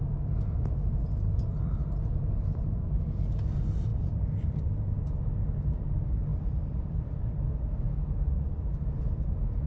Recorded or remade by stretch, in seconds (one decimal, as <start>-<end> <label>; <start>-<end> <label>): 0.0-3.9 recorded; 3.9-4.6 remade; 4.6-6.3 recorded; 6.3-7.2 remade; 7.2-9.7 recorded